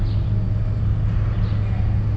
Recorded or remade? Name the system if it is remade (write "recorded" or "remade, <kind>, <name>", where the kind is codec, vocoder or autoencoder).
recorded